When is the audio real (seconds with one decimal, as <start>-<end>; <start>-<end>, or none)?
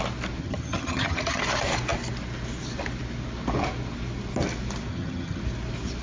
0.0-0.4; 1.4-4.9; 5.4-6.0